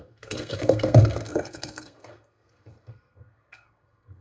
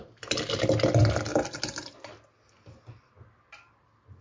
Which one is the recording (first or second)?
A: second